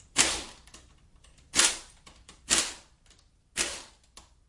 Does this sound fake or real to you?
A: fake